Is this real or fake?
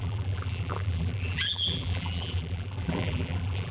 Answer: fake